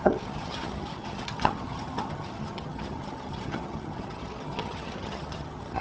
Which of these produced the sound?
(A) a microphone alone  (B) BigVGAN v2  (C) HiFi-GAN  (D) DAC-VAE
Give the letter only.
C